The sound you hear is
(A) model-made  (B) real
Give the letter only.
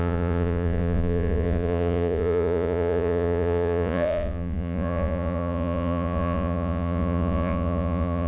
A